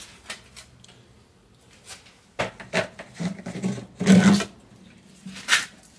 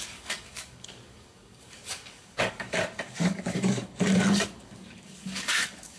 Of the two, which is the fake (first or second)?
second